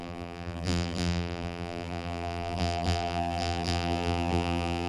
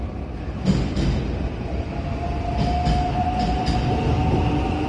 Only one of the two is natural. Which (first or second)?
second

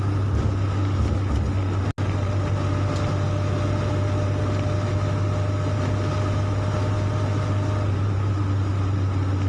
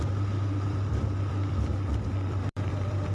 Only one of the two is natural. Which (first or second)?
first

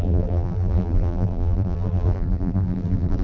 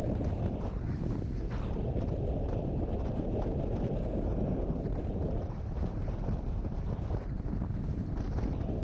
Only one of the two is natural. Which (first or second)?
second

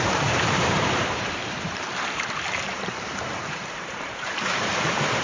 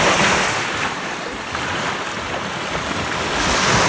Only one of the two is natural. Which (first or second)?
second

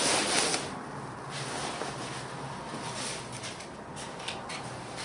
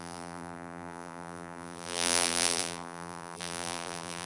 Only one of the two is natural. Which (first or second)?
first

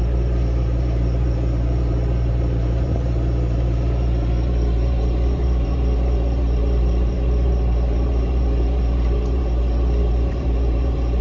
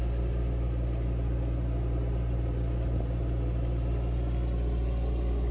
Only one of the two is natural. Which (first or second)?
second